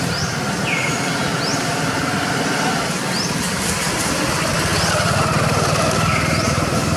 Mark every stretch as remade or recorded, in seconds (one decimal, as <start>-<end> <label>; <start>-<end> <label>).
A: 0.0-1.3 remade; 1.3-2.3 recorded; 2.3-4.7 remade; 4.7-5.2 recorded; 5.2-7.0 remade